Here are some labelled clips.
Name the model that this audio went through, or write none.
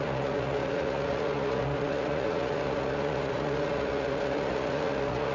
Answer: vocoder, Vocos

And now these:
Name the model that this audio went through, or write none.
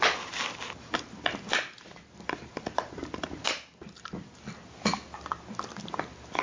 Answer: none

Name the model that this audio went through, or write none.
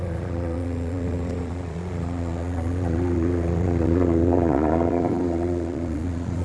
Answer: vocoder, Vocos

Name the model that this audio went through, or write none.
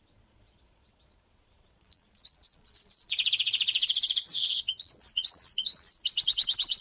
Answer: vocoder, Vocos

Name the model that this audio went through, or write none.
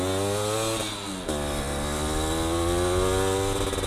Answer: none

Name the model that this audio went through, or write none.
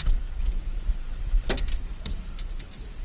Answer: none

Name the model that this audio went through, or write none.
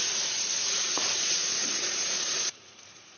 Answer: vocoder, Vocos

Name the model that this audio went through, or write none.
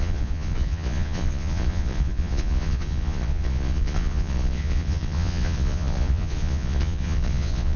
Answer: vocoder, Vocos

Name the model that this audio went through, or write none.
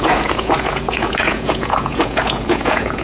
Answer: vocoder, Vocos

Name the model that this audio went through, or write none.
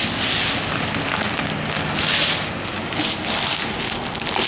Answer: none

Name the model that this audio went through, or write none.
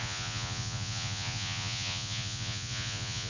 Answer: vocoder, Vocos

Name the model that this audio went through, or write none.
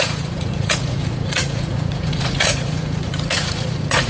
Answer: vocoder, Vocos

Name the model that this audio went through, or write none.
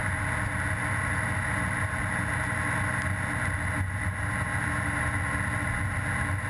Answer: none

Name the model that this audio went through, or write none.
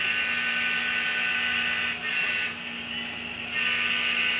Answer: none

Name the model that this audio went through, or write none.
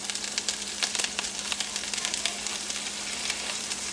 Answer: none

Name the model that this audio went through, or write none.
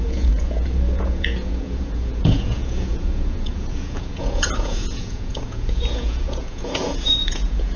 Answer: vocoder, Vocos